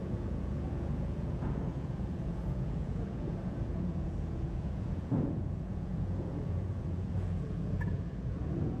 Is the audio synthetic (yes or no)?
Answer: yes